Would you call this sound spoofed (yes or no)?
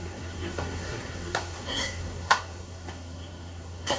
yes